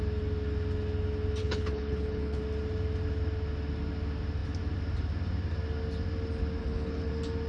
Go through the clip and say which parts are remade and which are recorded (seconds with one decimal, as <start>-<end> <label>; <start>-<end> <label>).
0.0-1.4 recorded; 1.4-2.4 remade; 2.4-6.6 recorded; 6.6-7.1 remade; 7.1-7.5 recorded